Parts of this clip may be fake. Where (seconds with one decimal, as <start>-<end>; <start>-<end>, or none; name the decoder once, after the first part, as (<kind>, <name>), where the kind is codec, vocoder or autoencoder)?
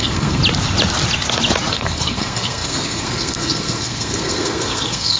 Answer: 0.0-0.4 (codec, SNAC); 1.7-5.2